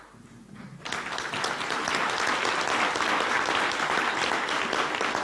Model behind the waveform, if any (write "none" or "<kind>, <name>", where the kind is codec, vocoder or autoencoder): none